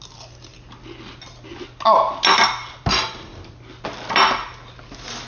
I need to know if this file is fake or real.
real